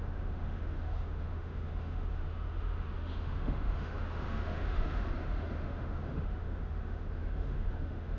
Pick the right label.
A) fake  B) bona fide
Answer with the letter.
A